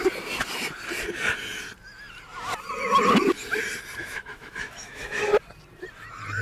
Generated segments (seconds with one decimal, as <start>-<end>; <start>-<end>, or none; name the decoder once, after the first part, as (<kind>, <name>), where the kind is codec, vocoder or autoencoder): 4.0-5.2 (autoencoder, DAC-VAE)